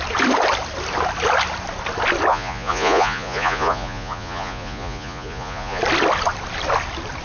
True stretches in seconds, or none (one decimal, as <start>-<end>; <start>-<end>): 0.0-2.3; 5.8-7.2